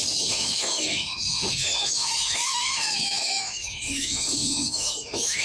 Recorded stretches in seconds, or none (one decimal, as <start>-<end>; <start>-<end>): none